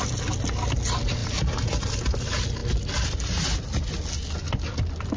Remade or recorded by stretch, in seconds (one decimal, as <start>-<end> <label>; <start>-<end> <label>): 0.0-1.2 recorded; 1.2-1.9 remade; 1.9-5.2 recorded